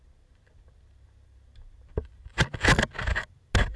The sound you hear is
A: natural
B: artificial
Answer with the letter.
A